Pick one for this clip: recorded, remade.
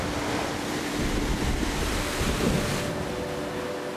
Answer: recorded